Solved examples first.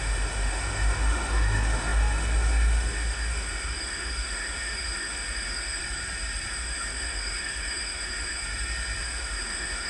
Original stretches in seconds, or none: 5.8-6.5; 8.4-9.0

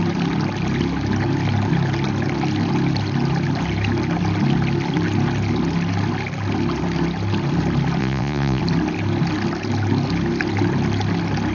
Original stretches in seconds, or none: 0.0-8.0; 8.6-11.5

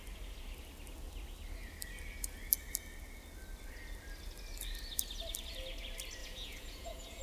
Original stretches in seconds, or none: 0.0-6.2

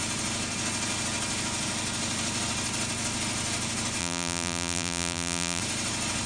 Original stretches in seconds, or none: 0.0-4.0; 5.6-6.3

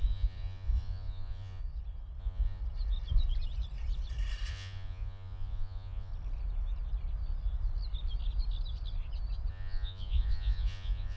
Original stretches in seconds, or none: 1.6-2.2; 2.6-4.5; 6.1-9.5

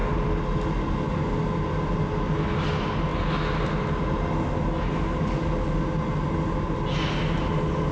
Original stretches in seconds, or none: 0.0-7.9

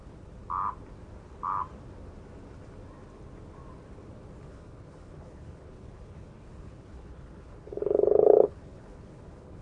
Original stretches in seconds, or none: 0.4-4.5

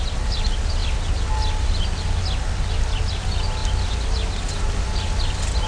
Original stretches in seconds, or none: 0.0-5.7